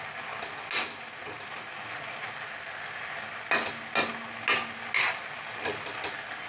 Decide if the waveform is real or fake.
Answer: real